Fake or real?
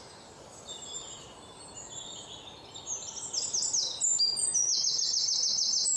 real